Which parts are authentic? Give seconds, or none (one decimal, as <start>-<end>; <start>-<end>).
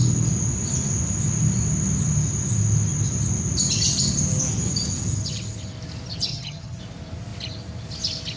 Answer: 0.0-6.3; 6.8-8.4